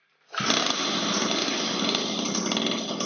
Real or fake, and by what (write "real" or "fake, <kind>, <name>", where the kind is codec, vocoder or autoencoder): real